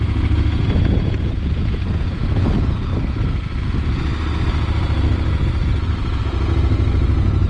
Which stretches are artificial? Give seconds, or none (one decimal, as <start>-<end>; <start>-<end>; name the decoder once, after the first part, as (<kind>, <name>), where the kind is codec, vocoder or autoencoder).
0.0-2.9 (vocoder, Vocos); 3.6-4.1; 6.2-7.5